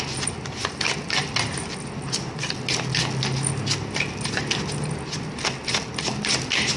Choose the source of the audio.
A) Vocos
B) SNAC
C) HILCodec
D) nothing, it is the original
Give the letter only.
D